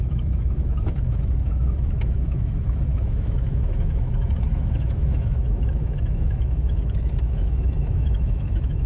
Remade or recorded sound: remade